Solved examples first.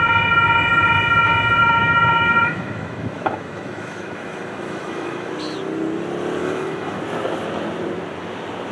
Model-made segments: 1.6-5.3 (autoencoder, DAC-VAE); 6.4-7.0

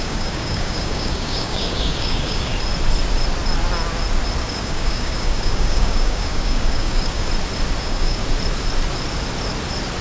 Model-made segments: 0.0-2.5 (codec, DAC); 4.4-7.3; 7.8-8.2

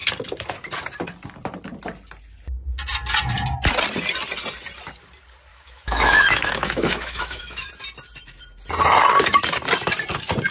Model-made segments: 5.5-7.7 (autoencoder, DAC-VAE)

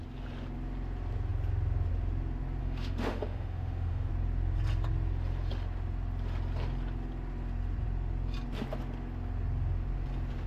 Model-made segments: 2.6-4.1 (autoencoder, DAC-VAE)

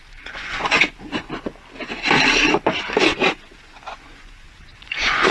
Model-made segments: 0.0-1.3 (vocoder, Vocos); 3.0-5.3

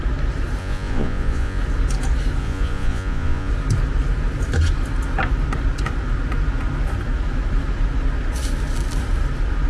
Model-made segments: 0.6-1.6 (vocoder, Vocos); 2.4-3.5

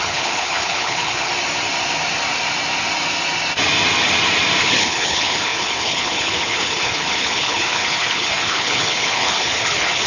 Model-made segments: 0.0-1.3 (codec, HILCodec); 4.6-10.1